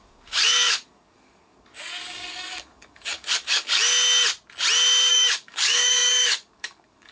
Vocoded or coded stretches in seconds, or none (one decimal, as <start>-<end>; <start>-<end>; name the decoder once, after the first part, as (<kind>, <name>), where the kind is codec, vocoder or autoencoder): 0.0-3.8 (codec, DAC); 5.1-7.1